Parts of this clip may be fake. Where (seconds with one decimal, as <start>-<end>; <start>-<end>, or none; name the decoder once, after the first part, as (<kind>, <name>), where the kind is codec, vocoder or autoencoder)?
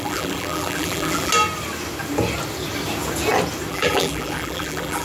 0.0-1.3 (vocoder, BigVGAN v2); 3.7-5.0